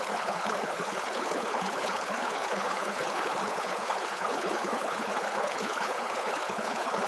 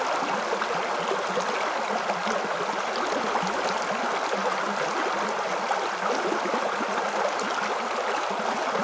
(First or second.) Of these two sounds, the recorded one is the second